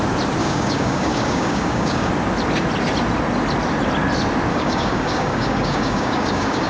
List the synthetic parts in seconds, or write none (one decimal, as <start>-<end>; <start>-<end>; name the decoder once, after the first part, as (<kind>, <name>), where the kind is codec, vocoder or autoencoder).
0.4-2.1 (codec, DAC); 4.5-6.7